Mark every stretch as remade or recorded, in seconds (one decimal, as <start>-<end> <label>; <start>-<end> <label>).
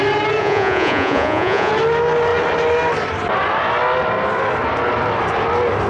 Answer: 0.0-0.4 recorded; 0.4-1.7 remade; 1.7-5.9 recorded